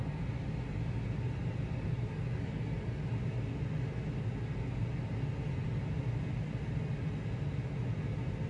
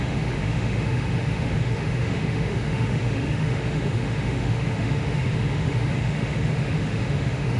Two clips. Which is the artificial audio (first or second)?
second